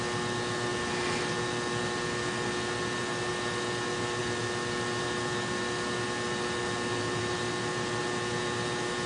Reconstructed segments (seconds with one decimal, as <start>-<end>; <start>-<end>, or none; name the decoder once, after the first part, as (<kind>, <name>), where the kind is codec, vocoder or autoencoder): none